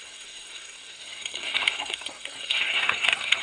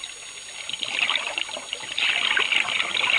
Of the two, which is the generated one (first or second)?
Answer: first